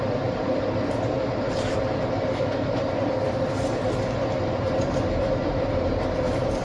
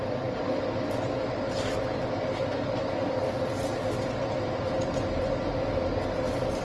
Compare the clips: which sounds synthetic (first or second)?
first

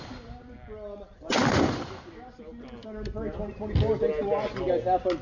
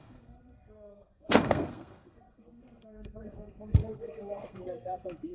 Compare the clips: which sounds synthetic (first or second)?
second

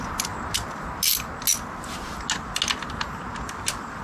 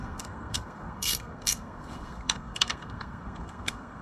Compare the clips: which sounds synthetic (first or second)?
second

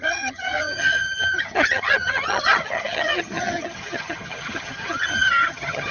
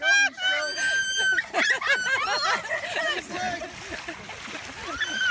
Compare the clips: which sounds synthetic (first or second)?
first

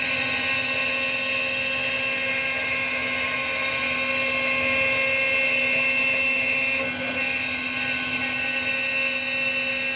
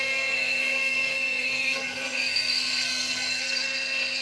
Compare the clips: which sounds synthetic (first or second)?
second